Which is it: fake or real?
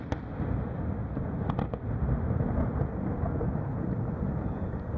real